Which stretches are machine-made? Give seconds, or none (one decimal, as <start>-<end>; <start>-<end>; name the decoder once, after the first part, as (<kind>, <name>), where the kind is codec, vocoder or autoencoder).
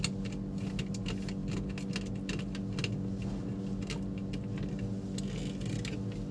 none